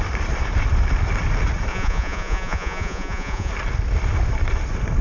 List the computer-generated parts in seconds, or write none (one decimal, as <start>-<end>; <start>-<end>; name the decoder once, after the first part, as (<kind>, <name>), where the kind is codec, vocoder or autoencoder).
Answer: 1.7-3.5 (vocoder, Vocos)

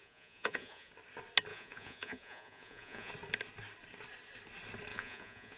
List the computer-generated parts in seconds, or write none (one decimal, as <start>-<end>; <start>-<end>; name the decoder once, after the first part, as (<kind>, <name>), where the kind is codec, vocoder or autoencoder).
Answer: 0.0-0.9 (vocoder, Vocos); 1.5-3.1; 4.9-5.6